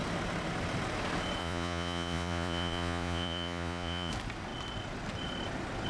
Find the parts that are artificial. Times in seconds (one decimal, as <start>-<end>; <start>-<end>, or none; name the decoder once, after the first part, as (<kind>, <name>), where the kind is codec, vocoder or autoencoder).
1.4-4.1 (vocoder, Vocos)